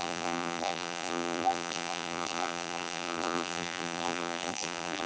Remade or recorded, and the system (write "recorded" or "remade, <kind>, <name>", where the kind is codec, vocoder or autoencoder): remade, vocoder, BigVGAN v2